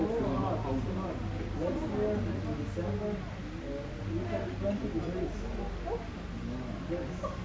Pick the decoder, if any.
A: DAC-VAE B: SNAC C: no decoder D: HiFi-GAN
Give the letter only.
C